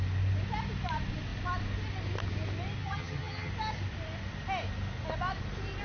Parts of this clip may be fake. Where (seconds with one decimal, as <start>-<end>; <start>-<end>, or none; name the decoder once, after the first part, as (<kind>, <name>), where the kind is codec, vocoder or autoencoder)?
2.8-3.5 (vocoder, HiFi-GAN)